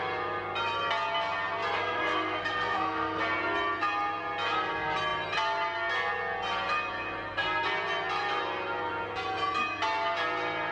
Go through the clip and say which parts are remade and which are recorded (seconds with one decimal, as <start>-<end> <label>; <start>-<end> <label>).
0.0-1.8 recorded; 1.8-3.2 remade; 3.2-10.7 recorded